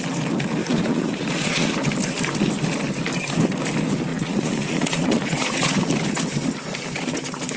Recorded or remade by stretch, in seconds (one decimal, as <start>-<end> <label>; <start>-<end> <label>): 0.0-0.6 recorded; 0.6-1.7 remade; 1.7-4.1 recorded; 4.1-5.7 remade; 5.7-7.6 recorded